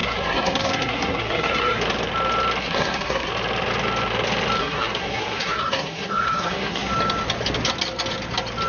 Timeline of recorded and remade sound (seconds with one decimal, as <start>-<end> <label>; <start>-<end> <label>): 0.0-1.8 remade; 1.8-2.6 recorded; 2.6-3.3 remade; 3.3-4.6 recorded; 4.6-6.9 remade; 6.9-8.7 recorded